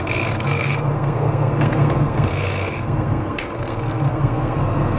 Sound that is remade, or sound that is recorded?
remade